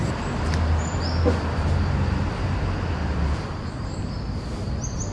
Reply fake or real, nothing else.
real